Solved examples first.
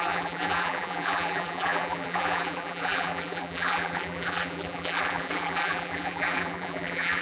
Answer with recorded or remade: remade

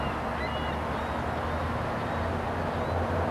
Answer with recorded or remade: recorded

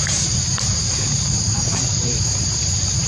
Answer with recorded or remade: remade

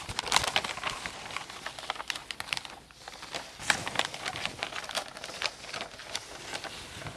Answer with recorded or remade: recorded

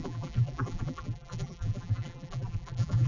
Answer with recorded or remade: remade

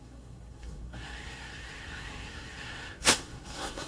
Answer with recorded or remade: remade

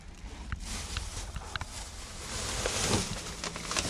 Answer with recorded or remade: recorded